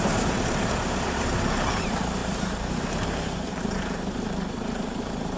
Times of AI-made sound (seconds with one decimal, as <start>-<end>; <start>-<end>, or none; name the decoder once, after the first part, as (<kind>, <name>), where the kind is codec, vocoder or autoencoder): 0.0-5.4 (vocoder, BigVGAN v2)